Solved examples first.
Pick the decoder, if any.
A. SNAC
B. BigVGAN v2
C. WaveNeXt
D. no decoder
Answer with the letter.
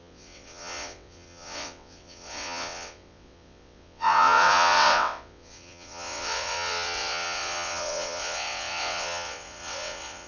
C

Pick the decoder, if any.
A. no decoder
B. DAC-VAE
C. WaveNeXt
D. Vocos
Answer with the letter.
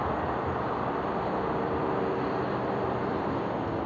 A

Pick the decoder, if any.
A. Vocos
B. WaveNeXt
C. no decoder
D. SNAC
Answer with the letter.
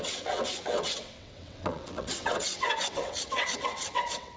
B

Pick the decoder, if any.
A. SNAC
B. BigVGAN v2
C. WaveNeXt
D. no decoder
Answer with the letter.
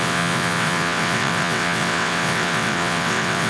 C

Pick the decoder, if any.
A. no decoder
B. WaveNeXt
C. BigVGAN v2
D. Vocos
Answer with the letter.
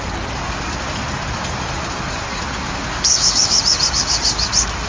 A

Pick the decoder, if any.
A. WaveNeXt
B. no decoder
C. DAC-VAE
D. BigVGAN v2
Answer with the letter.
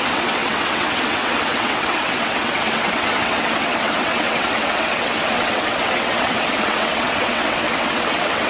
A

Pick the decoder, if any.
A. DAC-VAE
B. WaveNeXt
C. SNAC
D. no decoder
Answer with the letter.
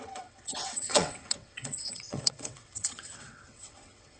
B